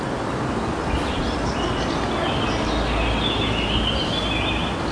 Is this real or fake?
real